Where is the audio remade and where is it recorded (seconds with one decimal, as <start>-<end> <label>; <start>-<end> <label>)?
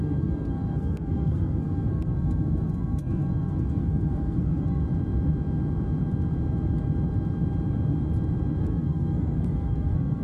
0.0-4.8 remade; 4.8-8.6 recorded; 8.6-10.2 remade